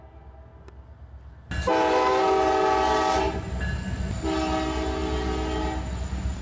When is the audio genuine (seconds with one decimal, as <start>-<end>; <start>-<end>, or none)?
0.0-6.4

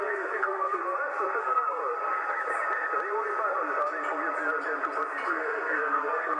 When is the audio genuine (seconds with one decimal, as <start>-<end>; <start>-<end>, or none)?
0.8-1.4; 1.8-5.3